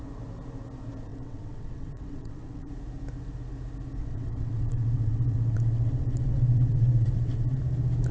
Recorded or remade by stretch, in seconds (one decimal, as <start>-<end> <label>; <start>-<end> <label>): 0.0-1.1 recorded; 1.1-2.7 remade; 2.7-4.0 recorded; 4.0-7.6 remade; 7.6-8.1 recorded